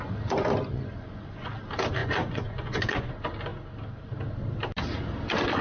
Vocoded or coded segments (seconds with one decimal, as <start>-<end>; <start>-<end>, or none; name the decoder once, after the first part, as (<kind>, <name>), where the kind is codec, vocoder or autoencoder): 0.7-1.5 (vocoder, Vocos); 2.0-3.1